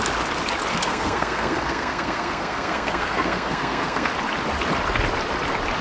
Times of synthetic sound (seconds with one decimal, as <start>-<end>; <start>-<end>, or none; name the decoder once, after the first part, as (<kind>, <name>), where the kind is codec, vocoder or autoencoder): 0.7-4.1 (codec, SNAC)